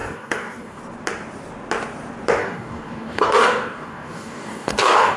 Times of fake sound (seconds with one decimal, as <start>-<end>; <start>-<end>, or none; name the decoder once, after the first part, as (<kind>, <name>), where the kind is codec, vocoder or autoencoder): 0.0-0.8 (codec, DAC); 2.4-5.2